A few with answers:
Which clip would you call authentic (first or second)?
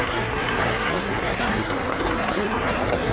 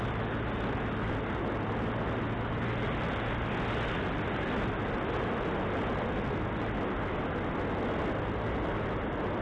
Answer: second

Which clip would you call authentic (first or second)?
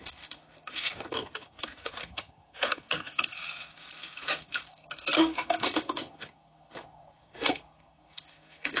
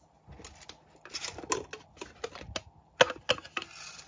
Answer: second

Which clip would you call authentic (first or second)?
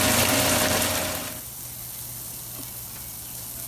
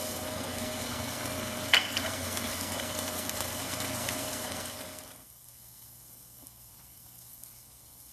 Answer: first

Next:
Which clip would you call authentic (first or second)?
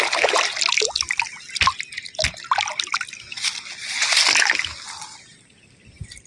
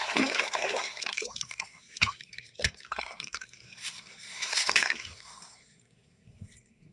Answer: first